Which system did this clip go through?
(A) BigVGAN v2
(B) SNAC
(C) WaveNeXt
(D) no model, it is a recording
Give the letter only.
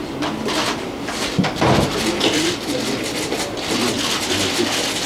D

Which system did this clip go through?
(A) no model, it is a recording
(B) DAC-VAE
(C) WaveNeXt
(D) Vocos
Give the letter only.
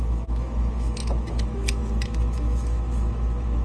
B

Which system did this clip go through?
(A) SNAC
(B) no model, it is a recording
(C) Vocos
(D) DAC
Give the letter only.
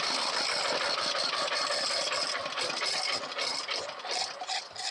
B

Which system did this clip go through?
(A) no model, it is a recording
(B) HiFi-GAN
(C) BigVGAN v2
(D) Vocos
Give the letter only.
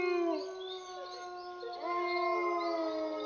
A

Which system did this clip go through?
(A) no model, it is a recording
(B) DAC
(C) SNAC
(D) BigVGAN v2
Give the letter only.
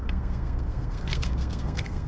C